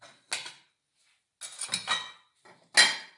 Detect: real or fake real